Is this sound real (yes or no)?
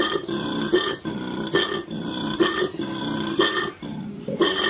yes